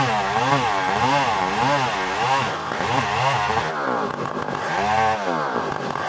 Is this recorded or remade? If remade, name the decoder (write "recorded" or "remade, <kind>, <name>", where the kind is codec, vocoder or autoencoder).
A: recorded